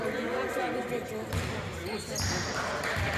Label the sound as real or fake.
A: real